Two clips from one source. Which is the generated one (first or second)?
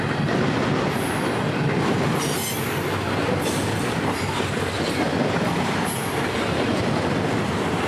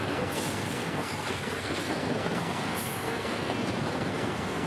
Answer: second